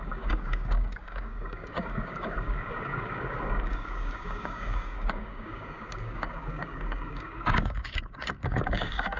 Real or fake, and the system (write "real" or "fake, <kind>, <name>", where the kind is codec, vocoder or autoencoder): fake, codec, DAC